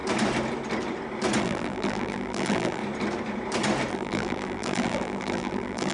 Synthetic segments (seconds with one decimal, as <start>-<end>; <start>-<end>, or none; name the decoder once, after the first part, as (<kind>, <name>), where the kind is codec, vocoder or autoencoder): 1.4-2.8 (vocoder, BigVGAN v2); 3.9-5.9